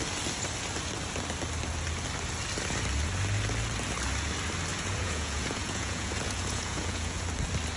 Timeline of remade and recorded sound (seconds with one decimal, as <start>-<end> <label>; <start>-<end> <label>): 0.0-4.7 recorded; 4.7-7.2 remade; 7.2-7.8 recorded

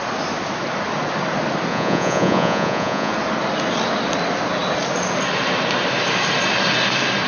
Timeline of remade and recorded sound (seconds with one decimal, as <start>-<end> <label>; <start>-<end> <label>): 0.0-1.7 recorded; 1.7-3.1 remade; 3.1-7.3 recorded